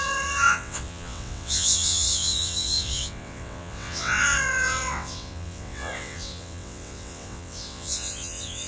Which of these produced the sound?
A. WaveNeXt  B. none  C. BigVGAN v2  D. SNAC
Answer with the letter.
A